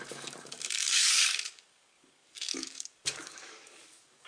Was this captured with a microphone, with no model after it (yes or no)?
no